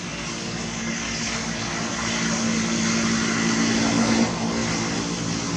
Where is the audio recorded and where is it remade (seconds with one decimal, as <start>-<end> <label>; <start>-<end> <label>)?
0.0-1.7 remade; 1.7-4.0 recorded; 4.0-4.6 remade; 4.6-5.6 recorded